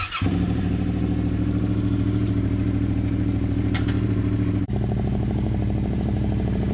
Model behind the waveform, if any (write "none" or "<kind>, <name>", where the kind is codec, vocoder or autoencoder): vocoder, BigVGAN v2